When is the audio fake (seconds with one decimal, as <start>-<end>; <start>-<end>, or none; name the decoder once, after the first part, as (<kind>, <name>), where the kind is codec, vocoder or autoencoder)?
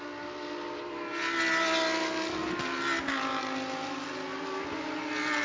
none